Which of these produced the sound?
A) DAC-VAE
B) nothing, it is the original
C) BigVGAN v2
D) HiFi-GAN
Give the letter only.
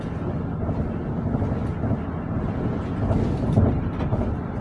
B